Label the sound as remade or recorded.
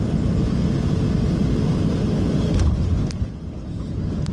recorded